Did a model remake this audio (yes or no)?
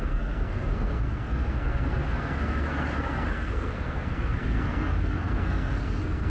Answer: yes